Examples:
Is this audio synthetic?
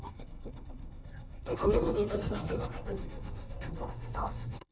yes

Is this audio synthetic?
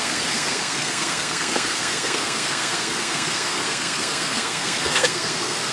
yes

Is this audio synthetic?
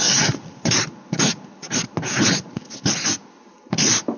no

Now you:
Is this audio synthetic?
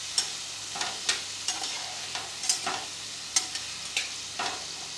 no